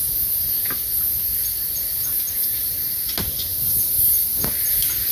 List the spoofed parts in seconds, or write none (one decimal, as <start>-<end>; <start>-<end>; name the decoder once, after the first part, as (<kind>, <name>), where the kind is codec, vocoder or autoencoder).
none